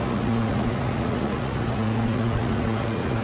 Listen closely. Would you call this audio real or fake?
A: fake